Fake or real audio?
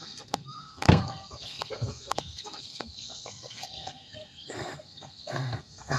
fake